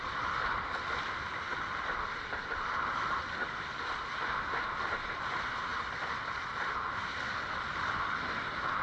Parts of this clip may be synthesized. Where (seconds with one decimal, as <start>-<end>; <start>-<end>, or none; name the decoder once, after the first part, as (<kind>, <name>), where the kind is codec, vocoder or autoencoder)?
none